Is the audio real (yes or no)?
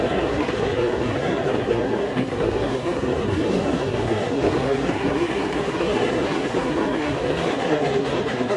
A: no